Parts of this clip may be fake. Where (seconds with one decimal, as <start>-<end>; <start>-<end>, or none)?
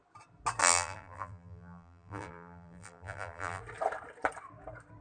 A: 0.6-3.6